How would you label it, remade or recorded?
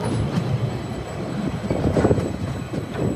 remade